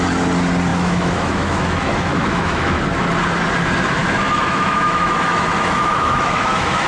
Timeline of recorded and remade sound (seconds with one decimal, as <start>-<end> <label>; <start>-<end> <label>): 0.0-0.7 recorded; 0.7-2.8 remade; 2.8-4.0 recorded; 4.0-6.9 remade